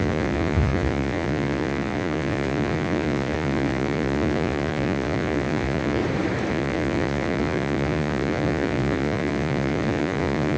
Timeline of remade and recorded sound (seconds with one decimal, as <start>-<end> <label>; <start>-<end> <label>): 0.0-6.0 remade; 6.0-6.5 recorded; 6.5-10.6 remade